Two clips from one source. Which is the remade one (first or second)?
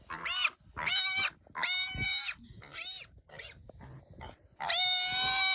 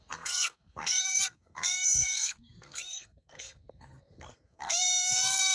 second